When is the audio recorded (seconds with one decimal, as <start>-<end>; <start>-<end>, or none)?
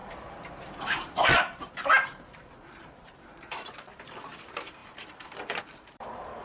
none